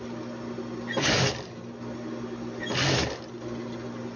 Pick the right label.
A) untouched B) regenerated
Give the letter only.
A